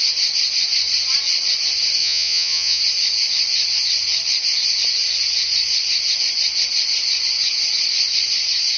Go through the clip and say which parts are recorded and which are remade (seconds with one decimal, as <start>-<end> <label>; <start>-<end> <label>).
0.0-2.0 recorded; 2.0-2.8 remade; 2.8-8.8 recorded